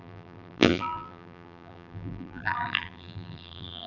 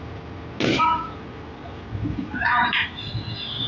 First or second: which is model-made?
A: first